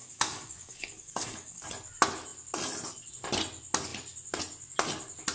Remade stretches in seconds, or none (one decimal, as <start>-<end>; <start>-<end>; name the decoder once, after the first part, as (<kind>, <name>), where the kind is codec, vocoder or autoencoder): 0.0-1.7 (codec, DAC)